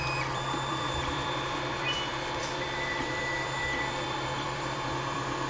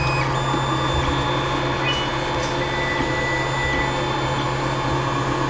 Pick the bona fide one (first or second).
second